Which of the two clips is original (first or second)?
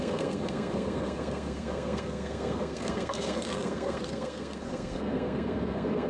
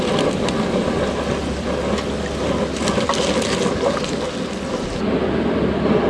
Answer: second